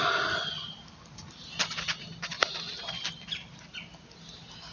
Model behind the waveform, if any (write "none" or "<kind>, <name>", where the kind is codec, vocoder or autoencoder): none